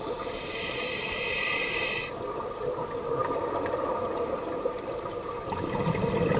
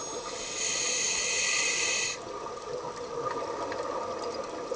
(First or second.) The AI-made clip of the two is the first